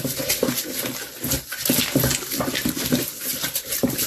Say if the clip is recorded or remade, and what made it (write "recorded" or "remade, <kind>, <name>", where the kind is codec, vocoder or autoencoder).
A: recorded